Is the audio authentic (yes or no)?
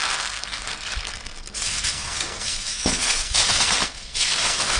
no